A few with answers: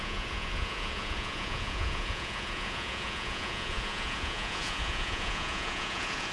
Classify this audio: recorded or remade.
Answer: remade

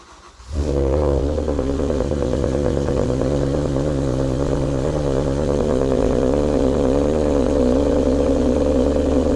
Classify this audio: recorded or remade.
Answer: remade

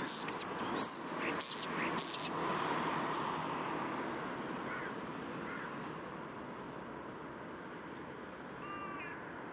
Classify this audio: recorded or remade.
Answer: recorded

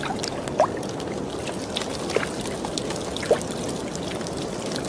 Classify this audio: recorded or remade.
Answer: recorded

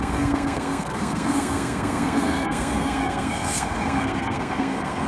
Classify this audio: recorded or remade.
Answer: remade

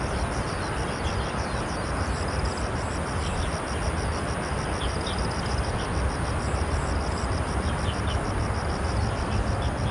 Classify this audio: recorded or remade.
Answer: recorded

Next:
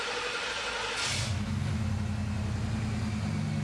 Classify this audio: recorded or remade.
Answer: recorded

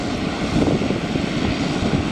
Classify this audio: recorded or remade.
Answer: recorded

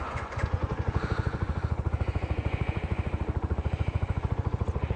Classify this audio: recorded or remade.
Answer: remade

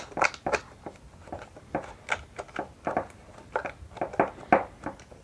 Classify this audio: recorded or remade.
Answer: recorded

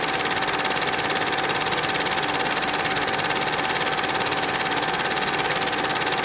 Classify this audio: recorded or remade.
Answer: recorded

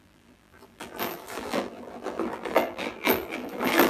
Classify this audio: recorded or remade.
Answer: remade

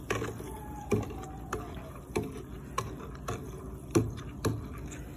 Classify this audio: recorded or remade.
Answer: recorded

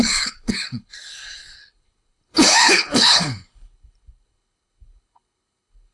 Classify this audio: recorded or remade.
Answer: remade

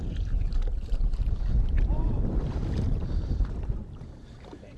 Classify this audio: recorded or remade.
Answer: remade